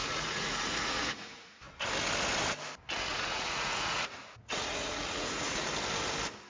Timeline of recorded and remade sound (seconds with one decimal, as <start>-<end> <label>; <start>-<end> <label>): 0.0-1.7 remade; 1.7-3.1 recorded; 3.1-5.7 remade; 5.7-6.5 recorded